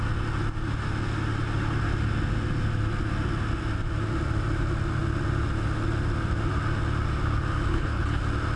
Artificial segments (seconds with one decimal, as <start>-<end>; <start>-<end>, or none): 7.7-8.2